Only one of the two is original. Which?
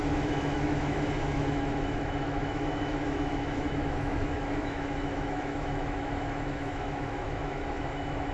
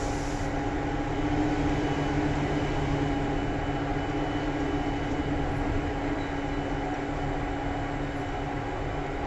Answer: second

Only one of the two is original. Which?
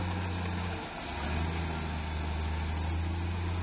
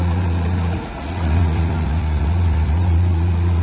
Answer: first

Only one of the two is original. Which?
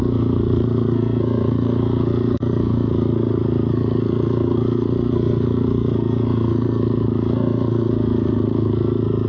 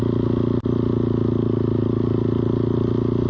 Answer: second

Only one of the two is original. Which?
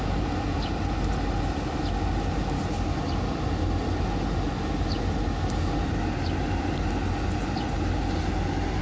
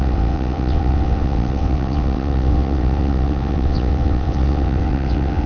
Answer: first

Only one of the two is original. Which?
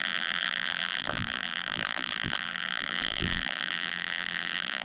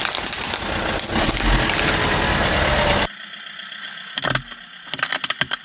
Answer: second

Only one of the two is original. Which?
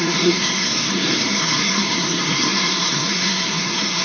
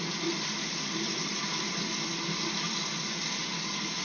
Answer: second